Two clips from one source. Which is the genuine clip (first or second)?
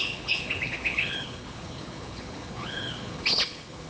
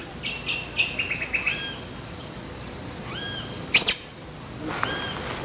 second